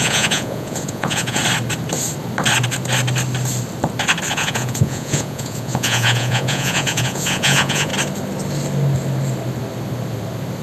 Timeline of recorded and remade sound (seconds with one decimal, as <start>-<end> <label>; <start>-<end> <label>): 0.0-1.4 remade; 1.4-4.3 recorded; 4.3-7.9 remade; 7.9-10.6 recorded

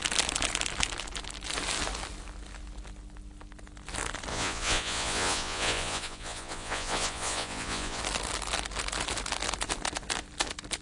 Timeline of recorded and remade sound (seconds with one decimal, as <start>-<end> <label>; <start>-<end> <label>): 0.0-4.3 recorded; 4.3-8.0 remade; 8.0-10.8 recorded

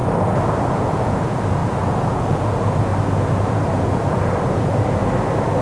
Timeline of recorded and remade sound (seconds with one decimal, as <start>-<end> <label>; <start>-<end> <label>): 0.0-0.7 recorded; 0.7-2.9 remade; 2.9-3.5 recorded; 3.5-5.0 remade; 5.0-5.6 recorded

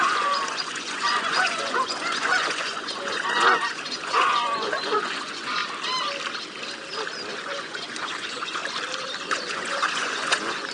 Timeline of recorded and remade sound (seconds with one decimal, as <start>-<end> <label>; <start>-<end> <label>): 0.0-5.6 remade; 5.6-7.3 recorded; 7.3-8.6 remade; 8.6-9.2 recorded; 9.2-10.7 remade

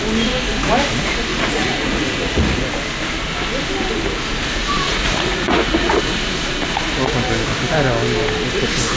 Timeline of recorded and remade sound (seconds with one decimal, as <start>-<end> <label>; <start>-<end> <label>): 0.0-1.3 recorded; 1.3-2.7 remade; 2.7-4.6 recorded; 4.6-6.0 remade; 6.0-9.0 recorded

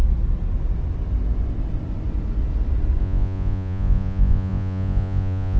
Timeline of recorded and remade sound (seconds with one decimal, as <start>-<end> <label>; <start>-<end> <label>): 0.0-3.0 recorded; 3.0-5.6 remade

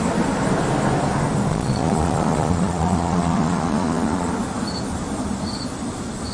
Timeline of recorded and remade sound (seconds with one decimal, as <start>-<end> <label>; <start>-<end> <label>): 0.0-1.5 recorded; 1.5-4.3 remade; 4.3-6.3 recorded

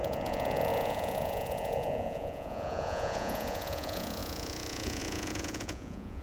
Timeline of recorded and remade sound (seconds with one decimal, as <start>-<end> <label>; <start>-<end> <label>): 0.0-6.2 remade